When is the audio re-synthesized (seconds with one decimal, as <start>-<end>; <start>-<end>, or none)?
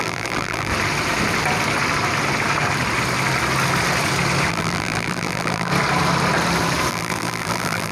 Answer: 0.0-0.7; 4.5-5.7; 6.9-7.9